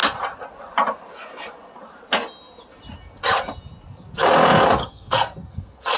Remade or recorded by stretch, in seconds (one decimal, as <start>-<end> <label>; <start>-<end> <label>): 0.0-4.8 recorded; 4.8-6.0 remade